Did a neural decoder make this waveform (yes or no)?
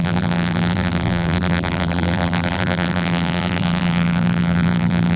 yes